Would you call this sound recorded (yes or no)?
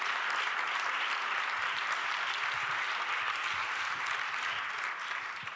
yes